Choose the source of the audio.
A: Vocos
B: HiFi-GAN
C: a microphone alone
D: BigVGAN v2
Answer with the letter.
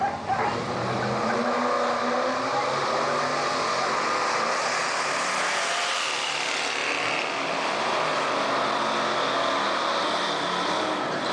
C